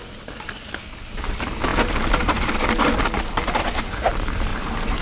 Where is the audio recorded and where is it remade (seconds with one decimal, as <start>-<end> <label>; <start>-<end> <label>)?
0.0-4.5 recorded; 4.5-5.0 remade